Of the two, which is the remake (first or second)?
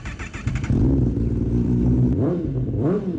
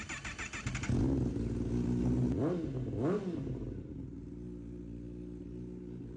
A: first